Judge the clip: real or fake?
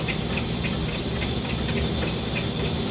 real